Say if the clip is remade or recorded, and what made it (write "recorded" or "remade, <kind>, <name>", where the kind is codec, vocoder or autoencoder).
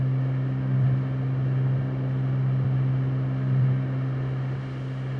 recorded